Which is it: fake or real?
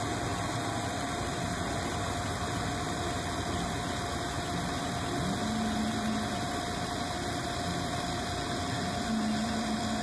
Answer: real